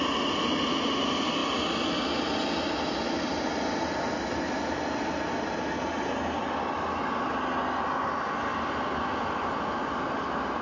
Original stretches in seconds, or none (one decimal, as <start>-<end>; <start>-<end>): 0.0-10.6